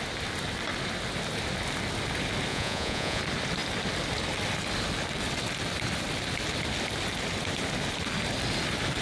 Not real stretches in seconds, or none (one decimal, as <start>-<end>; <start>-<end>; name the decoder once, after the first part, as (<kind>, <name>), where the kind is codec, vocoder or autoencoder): 2.5-3.2 (vocoder, Vocos)